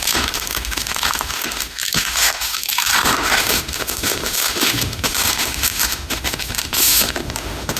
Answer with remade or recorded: remade